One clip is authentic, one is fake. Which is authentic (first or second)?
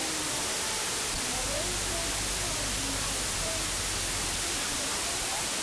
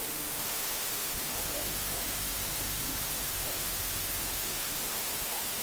first